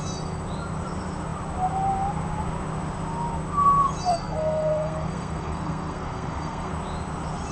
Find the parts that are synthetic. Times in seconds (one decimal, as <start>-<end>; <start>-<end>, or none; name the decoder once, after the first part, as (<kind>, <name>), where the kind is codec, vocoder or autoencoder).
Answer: 4.1-6.7 (codec, SNAC)